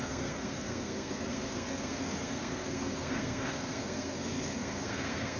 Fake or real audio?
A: fake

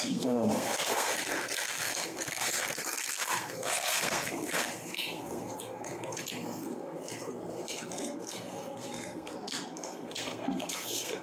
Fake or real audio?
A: fake